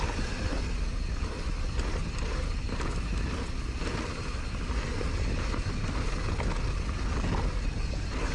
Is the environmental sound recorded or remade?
recorded